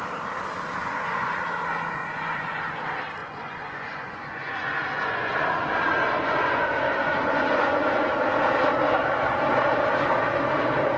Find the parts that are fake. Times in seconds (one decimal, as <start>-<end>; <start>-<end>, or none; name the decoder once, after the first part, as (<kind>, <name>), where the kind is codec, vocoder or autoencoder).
0.8-1.5 (vocoder, Vocos); 2.0-2.8; 3.2-8.1